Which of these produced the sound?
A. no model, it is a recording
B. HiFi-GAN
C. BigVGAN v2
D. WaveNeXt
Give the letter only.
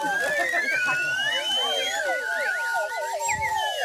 A